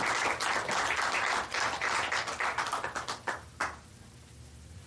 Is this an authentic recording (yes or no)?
yes